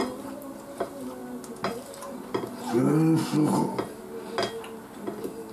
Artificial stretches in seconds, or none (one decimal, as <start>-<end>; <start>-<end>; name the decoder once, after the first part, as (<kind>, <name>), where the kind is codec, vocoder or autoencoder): none